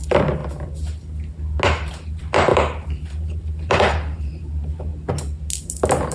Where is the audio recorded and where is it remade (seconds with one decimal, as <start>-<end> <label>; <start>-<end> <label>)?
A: 0.0-0.4 remade; 0.4-1.9 recorded; 1.9-4.9 remade; 4.9-5.6 recorded; 5.6-6.1 remade